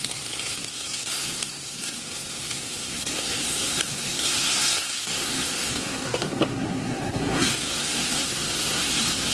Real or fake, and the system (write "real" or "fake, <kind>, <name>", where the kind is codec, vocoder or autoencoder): fake, codec, SNAC